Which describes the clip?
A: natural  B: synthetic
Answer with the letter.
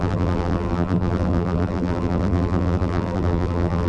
B